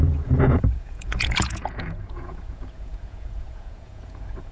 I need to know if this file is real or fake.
fake